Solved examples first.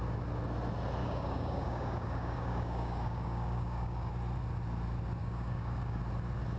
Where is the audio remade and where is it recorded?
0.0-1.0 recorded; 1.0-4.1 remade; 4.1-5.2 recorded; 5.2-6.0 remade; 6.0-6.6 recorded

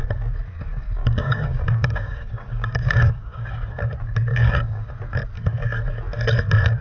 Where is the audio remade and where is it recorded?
0.0-1.0 recorded; 1.0-3.5 remade; 3.5-4.3 recorded; 4.3-4.9 remade; 4.9-6.8 recorded

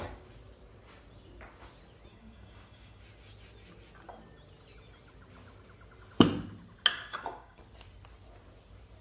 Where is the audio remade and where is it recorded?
0.0-2.1 recorded; 2.1-3.0 remade; 3.0-6.9 recorded; 6.9-7.6 remade; 7.6-9.0 recorded

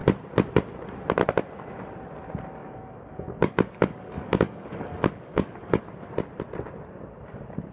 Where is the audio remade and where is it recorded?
0.0-2.6 recorded; 2.6-5.8 remade; 5.8-7.7 recorded

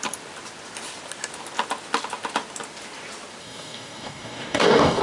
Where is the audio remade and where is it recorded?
0.0-3.4 recorded; 3.4-5.0 remade

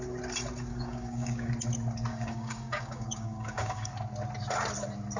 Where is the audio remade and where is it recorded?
0.0-0.7 recorded; 0.7-1.5 remade; 1.5-2.1 recorded; 2.1-3.9 remade; 3.9-5.2 recorded